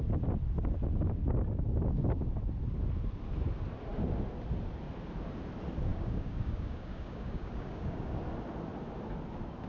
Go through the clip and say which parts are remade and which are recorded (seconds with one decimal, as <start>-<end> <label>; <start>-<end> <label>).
0.0-5.9 recorded; 5.9-8.2 remade; 8.2-9.7 recorded